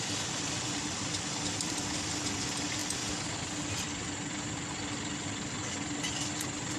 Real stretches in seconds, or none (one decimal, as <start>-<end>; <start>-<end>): 0.0-6.8